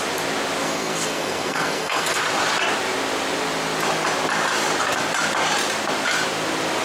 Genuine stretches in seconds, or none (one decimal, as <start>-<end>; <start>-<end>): 0.0-0.6; 2.2-6.8